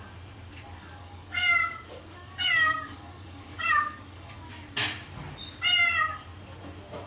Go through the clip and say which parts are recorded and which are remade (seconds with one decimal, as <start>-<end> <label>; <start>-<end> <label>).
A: 0.0-0.8 recorded; 0.8-4.5 remade; 4.5-7.1 recorded